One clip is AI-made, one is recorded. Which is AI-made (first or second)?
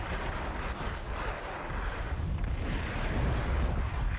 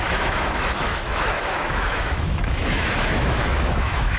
second